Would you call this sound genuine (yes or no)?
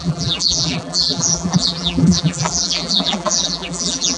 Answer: no